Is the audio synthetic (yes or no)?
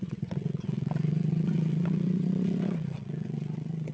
yes